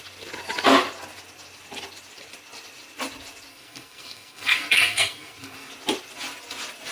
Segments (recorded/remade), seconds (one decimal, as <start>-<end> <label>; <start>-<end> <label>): 0.0-3.5 recorded; 3.5-5.7 remade; 5.7-6.9 recorded